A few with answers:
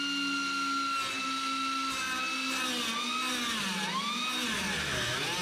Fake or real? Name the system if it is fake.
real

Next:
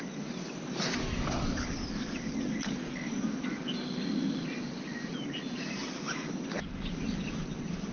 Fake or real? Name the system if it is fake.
real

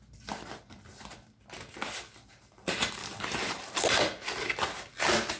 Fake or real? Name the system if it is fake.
real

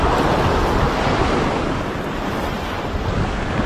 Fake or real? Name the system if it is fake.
real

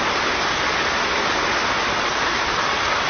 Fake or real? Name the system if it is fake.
real